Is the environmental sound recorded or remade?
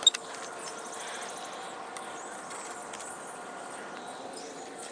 recorded